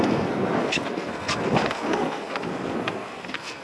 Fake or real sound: fake